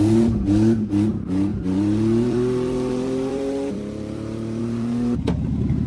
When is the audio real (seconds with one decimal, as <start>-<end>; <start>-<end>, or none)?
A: none